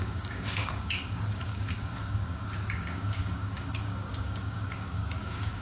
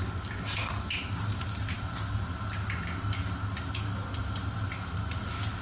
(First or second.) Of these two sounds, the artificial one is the first